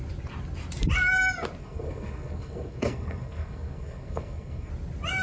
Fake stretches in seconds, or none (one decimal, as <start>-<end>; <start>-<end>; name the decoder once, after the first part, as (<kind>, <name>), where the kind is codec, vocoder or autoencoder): 1.6-4.7 (codec, SNAC)